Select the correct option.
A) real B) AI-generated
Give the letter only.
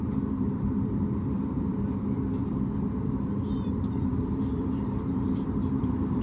B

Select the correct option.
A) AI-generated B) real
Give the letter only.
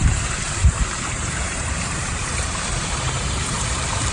A